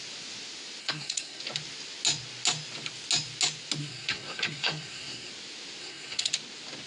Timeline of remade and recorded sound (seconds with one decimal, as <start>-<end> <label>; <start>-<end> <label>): 0.0-0.8 recorded; 0.8-1.4 remade; 1.4-3.8 recorded; 3.8-5.3 remade; 5.3-5.8 recorded; 5.8-6.3 remade; 6.3-6.9 recorded